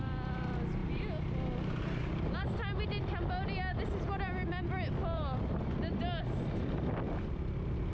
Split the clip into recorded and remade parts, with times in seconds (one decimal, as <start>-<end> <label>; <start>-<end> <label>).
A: 0.0-7.9 recorded